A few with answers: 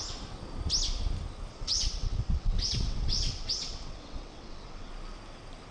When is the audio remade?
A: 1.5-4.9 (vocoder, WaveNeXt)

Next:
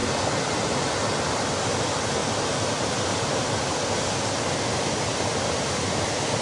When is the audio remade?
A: none

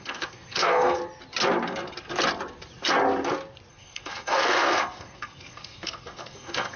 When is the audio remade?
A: 0.0-1.0 (codec, SNAC); 3.7-6.8

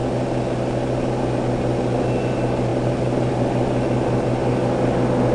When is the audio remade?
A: none